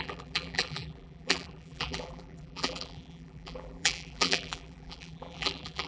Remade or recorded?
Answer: remade